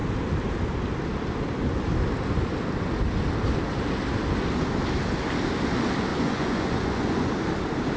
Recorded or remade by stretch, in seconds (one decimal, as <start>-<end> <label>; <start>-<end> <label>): 0.0-6.1 recorded; 6.1-7.3 remade; 7.3-8.0 recorded